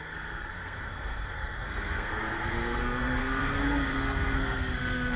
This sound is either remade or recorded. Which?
remade